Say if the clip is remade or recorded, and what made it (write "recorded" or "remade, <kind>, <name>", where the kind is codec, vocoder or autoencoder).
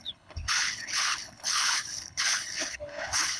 remade, codec, HILCodec